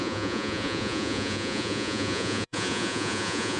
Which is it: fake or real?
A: fake